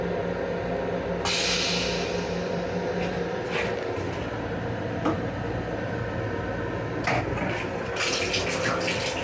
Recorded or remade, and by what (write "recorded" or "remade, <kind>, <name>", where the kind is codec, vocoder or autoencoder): recorded